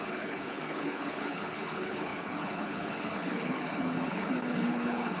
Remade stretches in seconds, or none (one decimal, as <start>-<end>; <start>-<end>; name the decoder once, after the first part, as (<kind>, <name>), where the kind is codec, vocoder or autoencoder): 0.0-5.2 (codec, HILCodec)